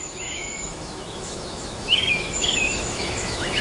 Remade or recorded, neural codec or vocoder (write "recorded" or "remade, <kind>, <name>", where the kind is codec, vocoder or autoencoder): remade, autoencoder, DAC-VAE